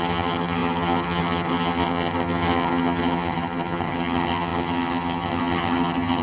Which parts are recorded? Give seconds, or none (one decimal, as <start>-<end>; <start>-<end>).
none

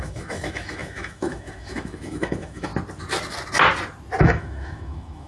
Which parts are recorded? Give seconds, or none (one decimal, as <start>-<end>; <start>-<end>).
2.7-4.2

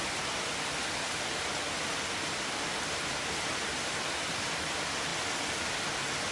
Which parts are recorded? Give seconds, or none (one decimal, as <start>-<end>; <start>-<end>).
0.0-6.3

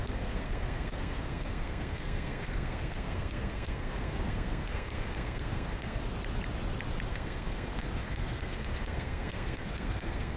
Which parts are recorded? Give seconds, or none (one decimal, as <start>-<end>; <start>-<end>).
6.0-7.1

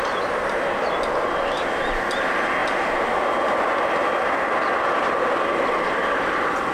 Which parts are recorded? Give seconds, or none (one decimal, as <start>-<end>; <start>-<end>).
0.0-6.7

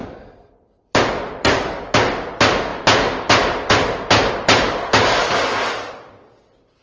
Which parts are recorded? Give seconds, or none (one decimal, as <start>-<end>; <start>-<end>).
1.9-6.8